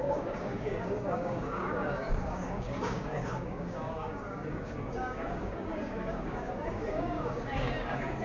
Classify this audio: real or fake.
fake